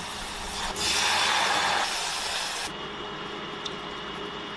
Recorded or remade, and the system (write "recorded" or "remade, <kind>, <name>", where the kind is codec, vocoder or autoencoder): recorded